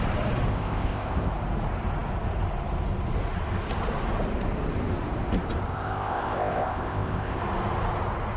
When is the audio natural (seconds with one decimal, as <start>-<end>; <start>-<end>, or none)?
0.0-0.5; 1.3-5.7; 7.4-8.4